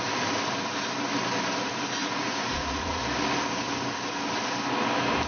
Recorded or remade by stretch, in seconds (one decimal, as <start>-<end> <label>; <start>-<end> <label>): 0.0-2.0 recorded; 2.0-3.0 remade; 3.0-5.3 recorded